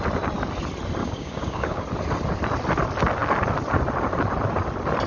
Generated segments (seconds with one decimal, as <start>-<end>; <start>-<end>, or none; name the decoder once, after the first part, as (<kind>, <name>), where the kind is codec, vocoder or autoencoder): 1.0-1.8 (codec, DAC)